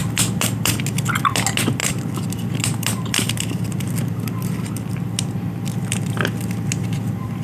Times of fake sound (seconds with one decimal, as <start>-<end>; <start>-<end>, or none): 0.0-0.7; 1.8-6.2